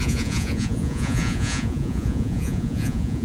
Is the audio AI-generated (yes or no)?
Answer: yes